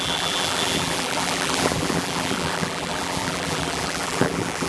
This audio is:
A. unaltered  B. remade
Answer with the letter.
B